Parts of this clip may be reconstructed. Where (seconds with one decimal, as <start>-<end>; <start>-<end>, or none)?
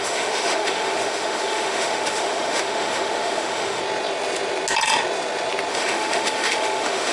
0.0-3.8; 5.7-7.1